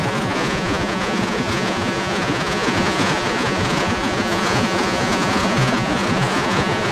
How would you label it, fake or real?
fake